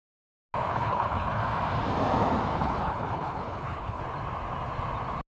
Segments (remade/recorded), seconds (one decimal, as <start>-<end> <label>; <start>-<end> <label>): 0.0-0.7 recorded; 0.7-1.4 remade; 1.4-2.5 recorded; 2.5-4.0 remade; 4.0-5.3 recorded